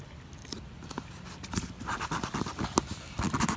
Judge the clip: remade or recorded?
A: recorded